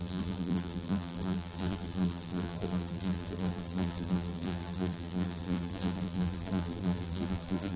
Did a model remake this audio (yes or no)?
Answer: yes